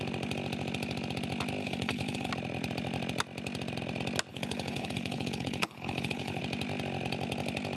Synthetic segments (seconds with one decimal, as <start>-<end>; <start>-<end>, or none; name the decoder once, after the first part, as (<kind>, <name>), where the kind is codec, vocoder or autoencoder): 1.6-2.3 (codec, HILCodec); 4.3-6.4